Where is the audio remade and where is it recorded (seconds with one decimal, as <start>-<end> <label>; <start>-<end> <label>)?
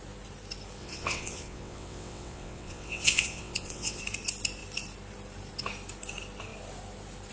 0.0-0.8 recorded; 0.8-4.0 remade; 4.0-7.3 recorded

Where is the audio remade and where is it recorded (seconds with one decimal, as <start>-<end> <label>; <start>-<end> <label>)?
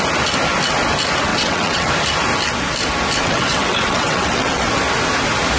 0.0-1.3 recorded; 1.3-1.9 remade; 1.9-3.2 recorded; 3.2-4.7 remade; 4.7-5.6 recorded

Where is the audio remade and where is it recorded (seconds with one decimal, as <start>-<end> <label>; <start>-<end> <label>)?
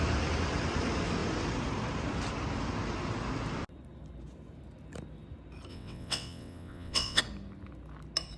0.0-5.7 recorded; 5.7-7.2 remade; 7.2-8.4 recorded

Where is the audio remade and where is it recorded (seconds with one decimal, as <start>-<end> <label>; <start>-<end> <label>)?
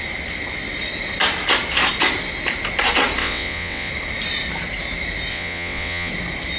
0.0-3.2 recorded; 3.2-3.9 remade; 3.9-5.3 recorded; 5.3-6.1 remade; 6.1-6.6 recorded